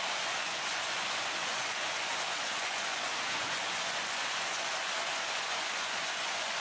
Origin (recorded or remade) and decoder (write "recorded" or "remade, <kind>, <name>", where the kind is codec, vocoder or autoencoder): remade, vocoder, Vocos